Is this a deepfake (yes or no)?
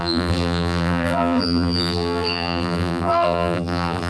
yes